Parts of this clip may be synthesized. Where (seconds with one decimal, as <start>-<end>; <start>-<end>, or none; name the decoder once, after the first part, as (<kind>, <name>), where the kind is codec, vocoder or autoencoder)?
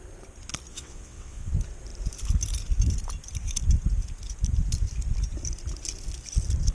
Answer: 0.7-1.5 (vocoder, WaveNeXt)